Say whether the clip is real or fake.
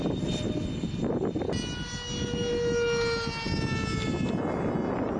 real